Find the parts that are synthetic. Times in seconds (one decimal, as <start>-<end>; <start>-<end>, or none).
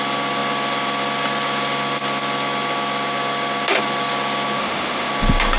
4.6-5.1